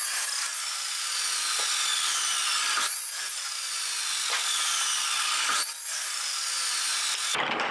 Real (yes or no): yes